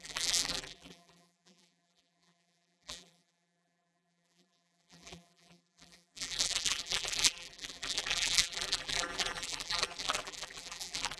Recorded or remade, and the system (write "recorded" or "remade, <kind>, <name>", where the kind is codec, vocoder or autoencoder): remade, vocoder, BigVGAN v2